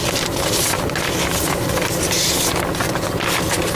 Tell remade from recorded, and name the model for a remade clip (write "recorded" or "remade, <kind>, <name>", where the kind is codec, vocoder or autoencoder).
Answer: recorded